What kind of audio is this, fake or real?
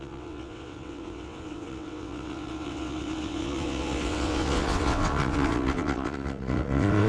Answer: fake